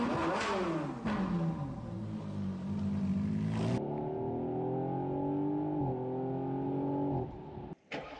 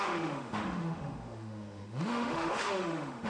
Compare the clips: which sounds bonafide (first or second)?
first